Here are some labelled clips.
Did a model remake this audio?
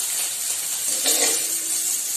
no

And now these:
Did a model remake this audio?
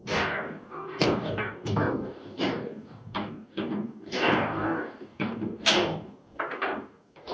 yes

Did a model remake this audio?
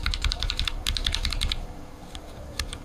yes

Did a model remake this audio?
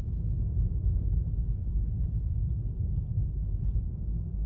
no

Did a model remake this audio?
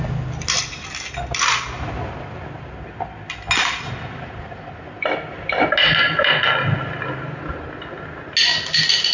no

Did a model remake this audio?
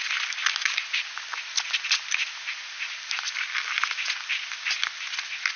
no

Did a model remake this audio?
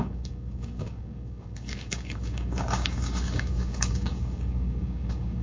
yes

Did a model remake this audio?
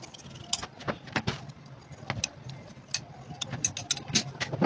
no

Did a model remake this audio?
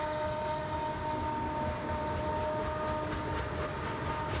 no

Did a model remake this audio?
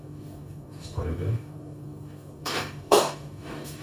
yes